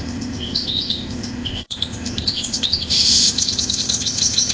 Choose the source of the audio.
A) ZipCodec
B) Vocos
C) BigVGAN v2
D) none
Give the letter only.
A